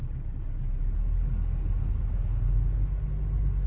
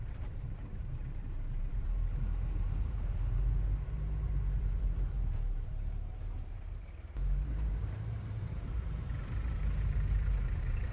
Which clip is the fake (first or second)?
second